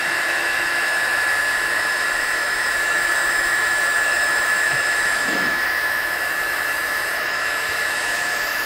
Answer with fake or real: fake